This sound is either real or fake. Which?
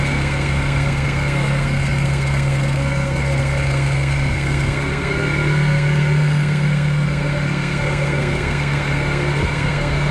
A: fake